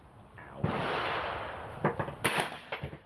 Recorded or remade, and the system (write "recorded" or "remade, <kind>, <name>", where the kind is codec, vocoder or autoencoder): recorded